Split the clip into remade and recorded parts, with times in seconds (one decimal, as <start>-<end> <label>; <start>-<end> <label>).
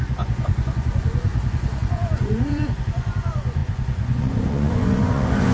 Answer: 0.0-5.5 remade